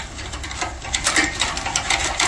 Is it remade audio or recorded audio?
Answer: recorded